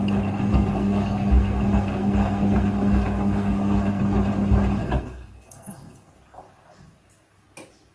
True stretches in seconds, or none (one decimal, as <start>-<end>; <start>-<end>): 0.0-0.5; 4.0-4.8; 6.1-7.9